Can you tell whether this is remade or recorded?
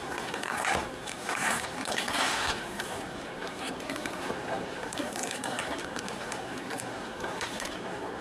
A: remade